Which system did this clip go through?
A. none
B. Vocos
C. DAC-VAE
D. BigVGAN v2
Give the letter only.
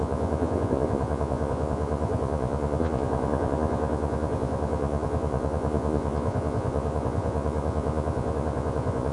B